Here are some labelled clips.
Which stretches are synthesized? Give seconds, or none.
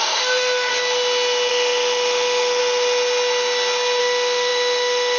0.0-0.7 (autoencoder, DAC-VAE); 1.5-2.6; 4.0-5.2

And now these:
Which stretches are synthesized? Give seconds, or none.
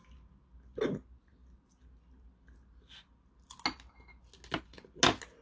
none